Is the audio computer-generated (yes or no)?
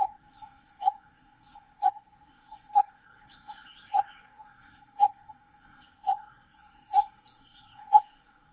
yes